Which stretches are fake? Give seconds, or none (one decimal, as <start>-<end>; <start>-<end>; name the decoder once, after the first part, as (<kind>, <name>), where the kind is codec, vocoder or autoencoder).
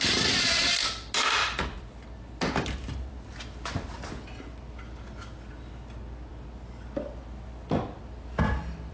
none